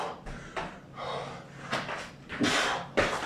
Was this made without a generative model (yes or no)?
yes